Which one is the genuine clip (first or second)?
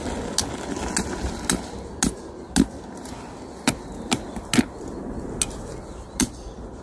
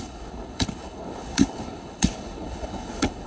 first